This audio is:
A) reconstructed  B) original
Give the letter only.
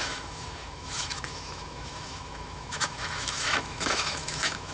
A